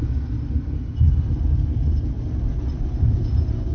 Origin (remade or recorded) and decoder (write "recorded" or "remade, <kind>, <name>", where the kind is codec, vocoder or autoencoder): recorded